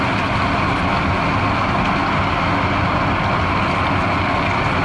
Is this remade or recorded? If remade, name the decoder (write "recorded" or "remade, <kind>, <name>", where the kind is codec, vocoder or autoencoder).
recorded